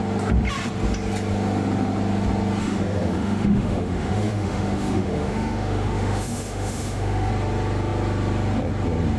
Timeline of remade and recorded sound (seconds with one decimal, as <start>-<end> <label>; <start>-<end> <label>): 0.0-2.6 recorded; 2.6-7.3 remade; 7.3-9.2 recorded